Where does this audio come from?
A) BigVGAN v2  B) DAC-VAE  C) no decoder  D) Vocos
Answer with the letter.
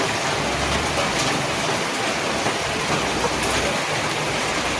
C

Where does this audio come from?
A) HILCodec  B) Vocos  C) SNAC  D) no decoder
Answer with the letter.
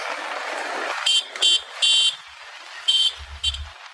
D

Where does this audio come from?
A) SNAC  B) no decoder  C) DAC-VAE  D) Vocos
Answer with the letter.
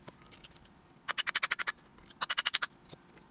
B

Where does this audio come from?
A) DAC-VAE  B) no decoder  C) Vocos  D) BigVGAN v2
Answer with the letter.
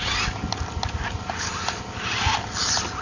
B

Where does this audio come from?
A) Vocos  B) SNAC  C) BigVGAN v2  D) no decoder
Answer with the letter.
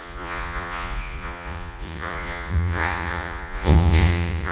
A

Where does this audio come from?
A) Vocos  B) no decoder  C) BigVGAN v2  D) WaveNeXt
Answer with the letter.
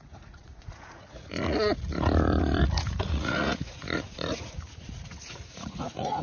A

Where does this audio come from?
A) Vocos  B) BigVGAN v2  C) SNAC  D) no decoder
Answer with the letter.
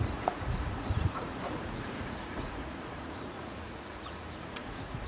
A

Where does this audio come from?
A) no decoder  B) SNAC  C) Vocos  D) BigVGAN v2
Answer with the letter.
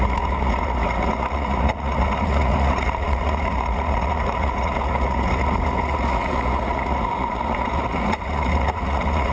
C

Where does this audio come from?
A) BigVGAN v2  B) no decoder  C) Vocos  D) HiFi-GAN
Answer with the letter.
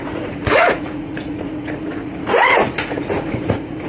C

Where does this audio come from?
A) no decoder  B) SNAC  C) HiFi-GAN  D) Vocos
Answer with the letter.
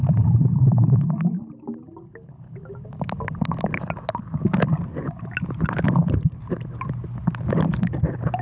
A